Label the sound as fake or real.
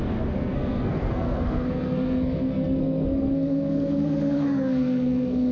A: fake